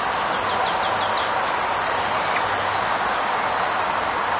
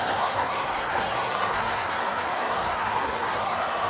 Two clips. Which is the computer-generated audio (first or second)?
second